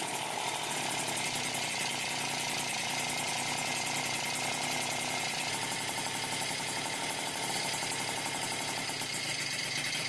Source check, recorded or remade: remade